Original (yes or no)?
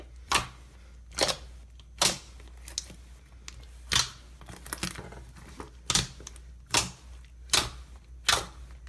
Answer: yes